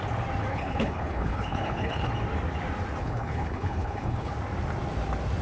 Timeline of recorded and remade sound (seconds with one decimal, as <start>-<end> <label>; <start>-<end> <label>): 0.0-0.5 recorded; 0.5-2.1 remade; 2.1-3.0 recorded; 3.0-4.3 remade; 4.3-5.4 recorded